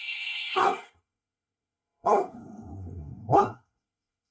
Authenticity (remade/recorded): remade